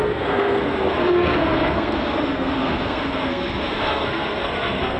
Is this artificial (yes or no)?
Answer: yes